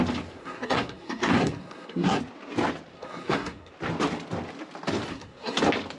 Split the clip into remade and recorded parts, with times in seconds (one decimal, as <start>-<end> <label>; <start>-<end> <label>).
0.0-0.4 recorded; 0.4-2.2 remade; 2.2-2.9 recorded; 2.9-3.7 remade; 3.7-5.1 recorded; 5.1-5.6 remade; 5.6-6.0 recorded